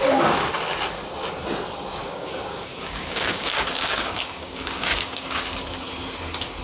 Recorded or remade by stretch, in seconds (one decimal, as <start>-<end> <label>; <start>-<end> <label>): 0.0-2.0 recorded; 2.0-5.4 remade; 5.4-6.6 recorded